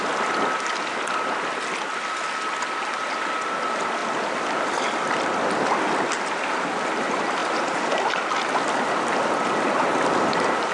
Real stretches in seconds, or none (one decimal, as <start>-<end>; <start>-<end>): 0.0-10.7